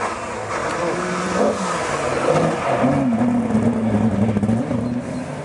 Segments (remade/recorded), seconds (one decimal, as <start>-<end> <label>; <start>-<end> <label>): 0.0-5.4 recorded